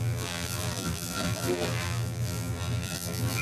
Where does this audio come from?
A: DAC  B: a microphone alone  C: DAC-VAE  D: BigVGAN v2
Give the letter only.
D